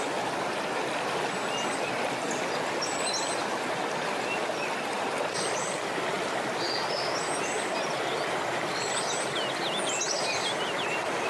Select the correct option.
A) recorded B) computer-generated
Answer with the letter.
A